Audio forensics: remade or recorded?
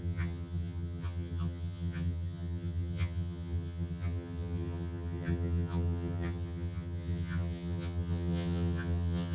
remade